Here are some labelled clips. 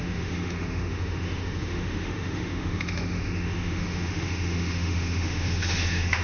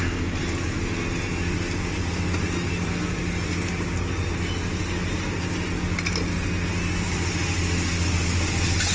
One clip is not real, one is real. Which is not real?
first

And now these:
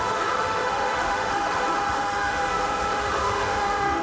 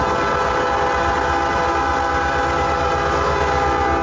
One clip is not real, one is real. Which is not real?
first